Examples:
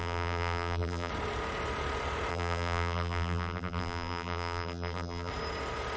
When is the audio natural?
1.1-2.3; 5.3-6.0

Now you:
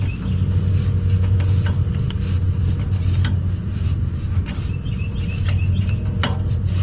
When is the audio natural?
0.0-6.8

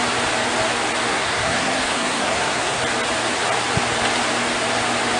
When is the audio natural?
0.0-1.1; 2.8-5.2

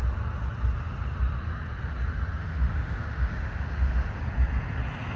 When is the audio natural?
0.0-2.4; 4.2-5.2